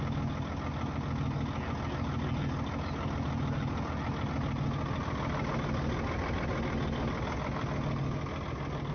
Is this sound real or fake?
real